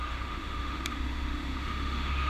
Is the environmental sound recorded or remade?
remade